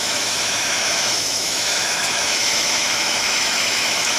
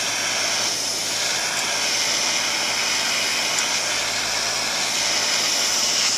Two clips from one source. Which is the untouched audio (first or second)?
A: second